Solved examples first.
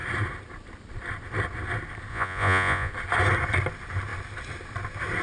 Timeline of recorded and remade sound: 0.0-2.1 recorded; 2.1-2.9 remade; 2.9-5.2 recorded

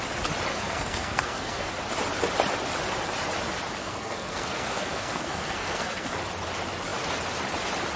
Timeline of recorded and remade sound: 0.0-0.5 recorded; 0.5-1.7 remade; 1.7-3.8 recorded; 3.8-6.2 remade; 6.2-8.0 recorded

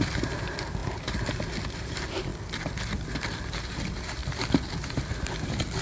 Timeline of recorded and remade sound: 0.0-0.8 remade; 0.8-1.9 recorded; 1.9-5.8 remade

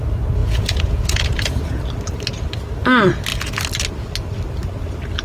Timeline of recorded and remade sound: 0.0-0.4 recorded; 0.4-1.8 remade; 1.8-5.2 recorded

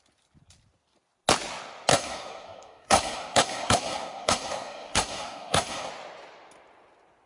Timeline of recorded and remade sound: 0.0-1.9 recorded; 1.9-5.9 remade; 5.9-7.3 recorded